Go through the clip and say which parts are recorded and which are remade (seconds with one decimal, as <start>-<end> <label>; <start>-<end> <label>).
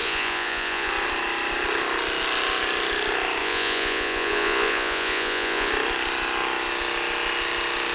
0.0-0.9 remade; 0.9-3.4 recorded; 3.4-5.7 remade; 5.7-7.9 recorded